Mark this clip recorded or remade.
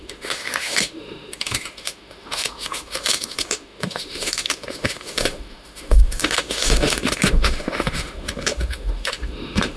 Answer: remade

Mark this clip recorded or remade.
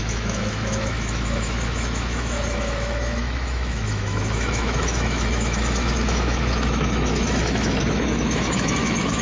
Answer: remade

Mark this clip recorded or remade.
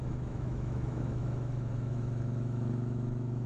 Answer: remade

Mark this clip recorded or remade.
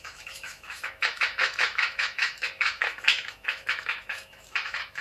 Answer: remade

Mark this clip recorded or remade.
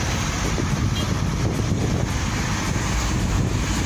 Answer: recorded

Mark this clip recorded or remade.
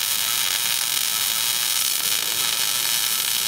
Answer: recorded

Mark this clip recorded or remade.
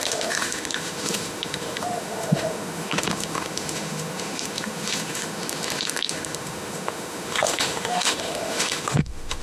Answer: remade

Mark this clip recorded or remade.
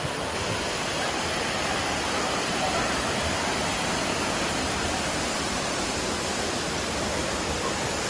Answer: recorded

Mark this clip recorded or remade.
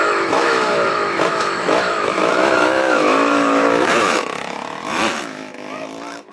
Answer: remade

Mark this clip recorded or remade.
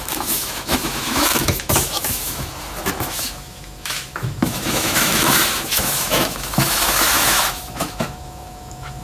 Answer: remade